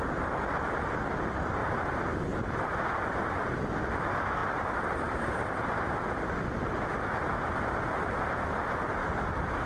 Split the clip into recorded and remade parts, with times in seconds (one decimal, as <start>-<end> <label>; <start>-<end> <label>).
0.0-1.6 recorded; 1.6-2.8 remade; 2.8-4.4 recorded; 4.4-6.4 remade; 6.4-9.0 recorded; 9.0-9.7 remade